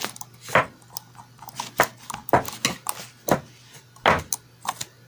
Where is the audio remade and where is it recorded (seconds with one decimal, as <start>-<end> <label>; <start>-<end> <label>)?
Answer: 0.0-5.1 recorded

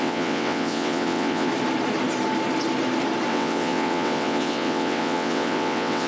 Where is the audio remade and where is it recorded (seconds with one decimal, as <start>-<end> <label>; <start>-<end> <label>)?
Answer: 0.0-1.5 remade; 1.5-3.3 recorded; 3.3-6.1 remade

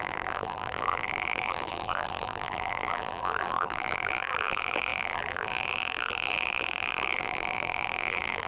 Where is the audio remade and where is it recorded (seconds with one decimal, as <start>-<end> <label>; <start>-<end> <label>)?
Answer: 0.0-8.5 remade

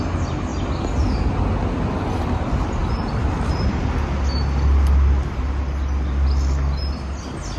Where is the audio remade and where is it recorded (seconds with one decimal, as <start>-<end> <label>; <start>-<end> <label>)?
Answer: 0.0-7.6 recorded

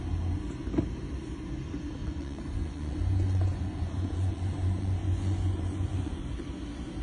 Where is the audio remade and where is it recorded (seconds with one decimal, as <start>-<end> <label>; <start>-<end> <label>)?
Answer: 0.0-2.0 recorded; 2.0-6.2 remade; 6.2-7.0 recorded

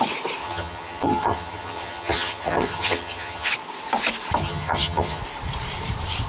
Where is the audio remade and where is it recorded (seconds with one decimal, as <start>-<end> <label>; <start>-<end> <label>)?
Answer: 0.0-0.4 recorded; 0.4-3.5 remade; 3.5-4.4 recorded; 4.4-5.2 remade; 5.2-6.3 recorded

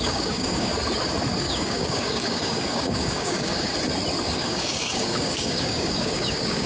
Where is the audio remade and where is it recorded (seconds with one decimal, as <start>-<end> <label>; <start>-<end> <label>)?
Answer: 0.0-0.7 remade; 0.7-1.4 recorded; 1.4-3.7 remade; 3.7-4.2 recorded; 4.2-6.7 remade

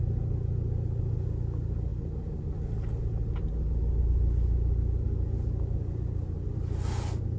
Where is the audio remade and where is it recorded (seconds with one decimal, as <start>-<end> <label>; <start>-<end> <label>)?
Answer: 0.0-7.4 recorded